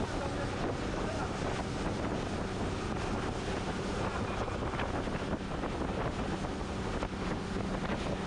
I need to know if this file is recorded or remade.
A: recorded